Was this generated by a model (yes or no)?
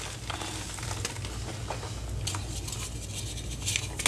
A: no